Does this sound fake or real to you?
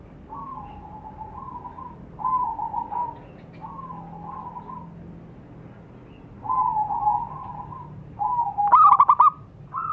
real